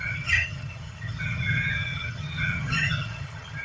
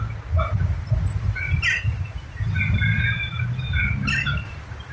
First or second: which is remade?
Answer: first